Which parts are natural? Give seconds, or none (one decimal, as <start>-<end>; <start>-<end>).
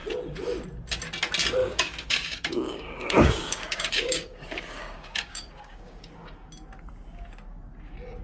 0.0-1.6; 6.5-8.2